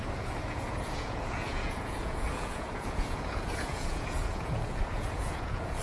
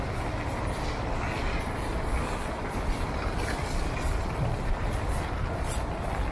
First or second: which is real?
second